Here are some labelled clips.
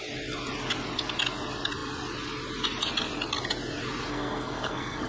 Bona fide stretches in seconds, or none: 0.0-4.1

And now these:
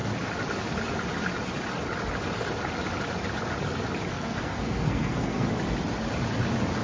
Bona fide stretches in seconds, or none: 0.0-4.1; 5.5-6.8

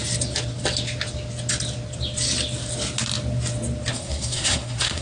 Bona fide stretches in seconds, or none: 0.0-3.9

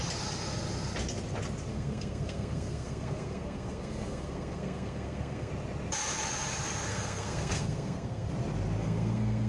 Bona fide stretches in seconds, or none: 0.0-1.7; 5.5-6.9; 8.3-8.8